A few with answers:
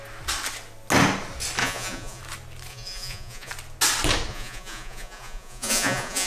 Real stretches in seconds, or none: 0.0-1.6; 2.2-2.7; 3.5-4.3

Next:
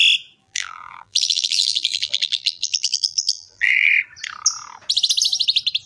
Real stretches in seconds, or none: 0.0-0.4; 3.9-5.9

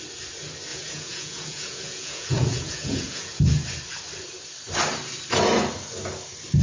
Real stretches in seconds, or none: 0.0-0.7; 3.4-6.6